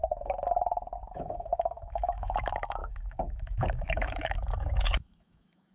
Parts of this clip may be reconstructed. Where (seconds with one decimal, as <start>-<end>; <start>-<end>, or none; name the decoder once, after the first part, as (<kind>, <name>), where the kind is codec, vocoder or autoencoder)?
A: 1.1-5.7 (autoencoder, DAC-VAE)